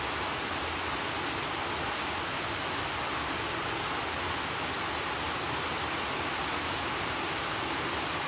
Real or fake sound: real